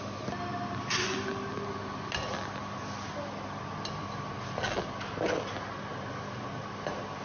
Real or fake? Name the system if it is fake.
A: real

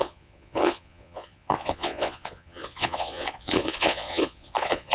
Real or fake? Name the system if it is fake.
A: fake, vocoder, Vocos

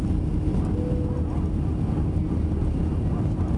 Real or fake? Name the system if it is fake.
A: real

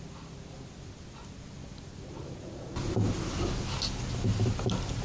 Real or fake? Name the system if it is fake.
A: real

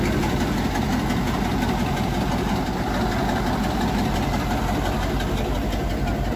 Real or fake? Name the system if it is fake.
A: real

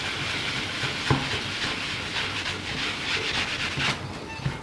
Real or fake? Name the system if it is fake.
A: real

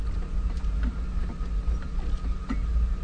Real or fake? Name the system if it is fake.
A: real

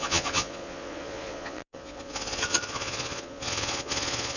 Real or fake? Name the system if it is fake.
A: fake, vocoder, Vocos